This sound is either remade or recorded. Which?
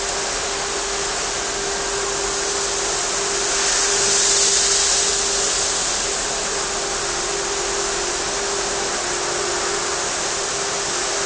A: recorded